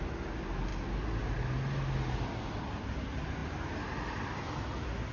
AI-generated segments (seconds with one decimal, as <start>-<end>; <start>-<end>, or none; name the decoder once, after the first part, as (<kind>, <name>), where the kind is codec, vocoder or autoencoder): none